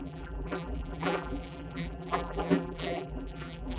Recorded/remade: remade